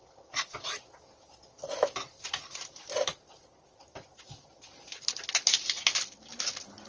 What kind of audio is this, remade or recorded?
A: recorded